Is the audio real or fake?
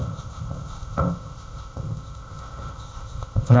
fake